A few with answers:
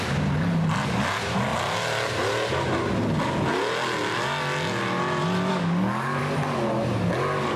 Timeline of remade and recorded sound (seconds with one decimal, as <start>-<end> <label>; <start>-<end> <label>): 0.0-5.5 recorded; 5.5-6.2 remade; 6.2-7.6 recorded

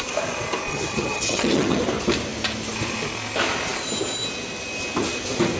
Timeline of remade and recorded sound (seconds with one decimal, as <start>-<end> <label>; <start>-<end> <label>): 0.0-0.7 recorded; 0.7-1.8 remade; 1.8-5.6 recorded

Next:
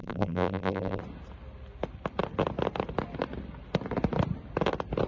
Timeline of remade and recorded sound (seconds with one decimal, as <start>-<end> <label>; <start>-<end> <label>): 0.0-1.0 remade; 1.0-5.1 recorded

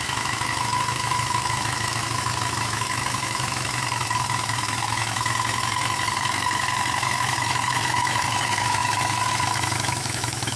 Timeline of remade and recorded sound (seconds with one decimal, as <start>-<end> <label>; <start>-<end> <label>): 0.0-10.6 remade